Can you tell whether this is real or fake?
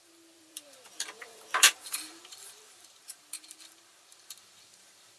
fake